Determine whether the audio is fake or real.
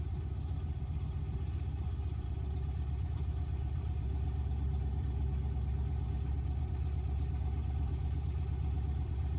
fake